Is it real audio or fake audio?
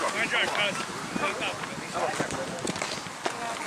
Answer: real